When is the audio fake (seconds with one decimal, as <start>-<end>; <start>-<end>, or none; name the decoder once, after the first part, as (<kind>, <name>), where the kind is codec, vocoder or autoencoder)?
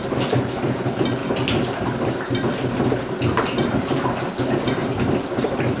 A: none